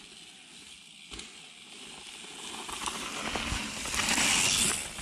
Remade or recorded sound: recorded